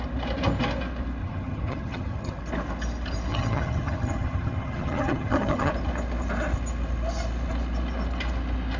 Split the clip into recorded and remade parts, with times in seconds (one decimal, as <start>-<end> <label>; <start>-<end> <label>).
0.0-1.2 recorded; 1.2-2.4 remade; 2.4-3.3 recorded; 3.3-5.7 remade; 5.7-8.8 recorded